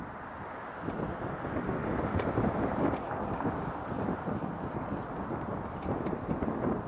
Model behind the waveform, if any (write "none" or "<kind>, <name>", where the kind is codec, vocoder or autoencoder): none